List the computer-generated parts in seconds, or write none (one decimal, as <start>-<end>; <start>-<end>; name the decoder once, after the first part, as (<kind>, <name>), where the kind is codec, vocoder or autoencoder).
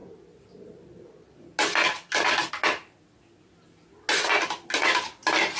none